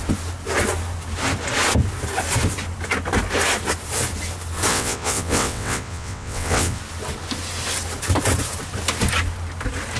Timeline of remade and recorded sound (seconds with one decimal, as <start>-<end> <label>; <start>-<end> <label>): 0.0-4.7 recorded; 4.7-6.8 remade; 6.8-10.0 recorded